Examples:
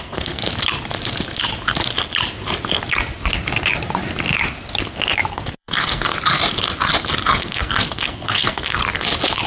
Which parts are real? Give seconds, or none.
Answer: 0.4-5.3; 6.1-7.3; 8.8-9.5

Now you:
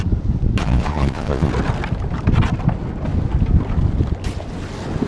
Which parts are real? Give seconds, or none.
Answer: 0.0-0.6; 1.5-5.1